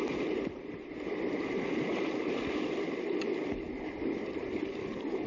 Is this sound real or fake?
real